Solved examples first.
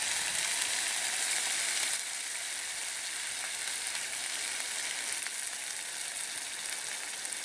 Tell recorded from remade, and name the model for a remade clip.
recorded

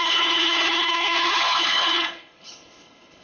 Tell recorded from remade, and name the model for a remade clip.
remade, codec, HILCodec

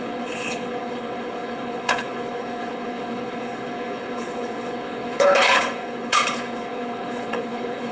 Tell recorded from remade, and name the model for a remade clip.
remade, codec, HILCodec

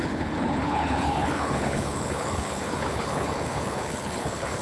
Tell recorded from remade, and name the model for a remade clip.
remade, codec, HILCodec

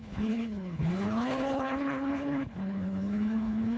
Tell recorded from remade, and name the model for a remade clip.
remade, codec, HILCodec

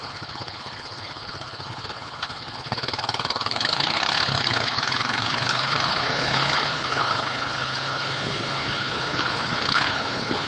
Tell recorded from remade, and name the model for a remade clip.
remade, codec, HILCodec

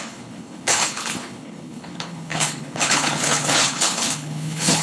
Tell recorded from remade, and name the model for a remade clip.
remade, codec, HILCodec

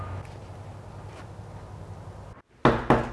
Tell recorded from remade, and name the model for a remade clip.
recorded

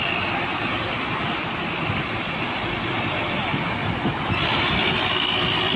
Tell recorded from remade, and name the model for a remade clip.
recorded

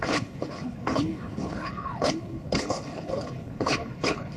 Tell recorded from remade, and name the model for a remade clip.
remade, codec, HILCodec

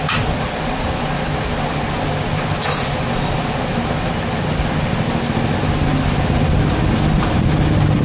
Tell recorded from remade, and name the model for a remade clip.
recorded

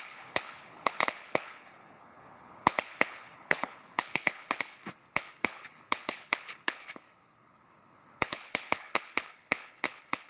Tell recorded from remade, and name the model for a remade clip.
remade, codec, HILCodec